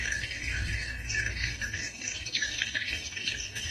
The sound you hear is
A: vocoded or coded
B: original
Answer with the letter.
A